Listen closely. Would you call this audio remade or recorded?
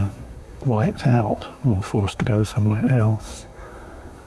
remade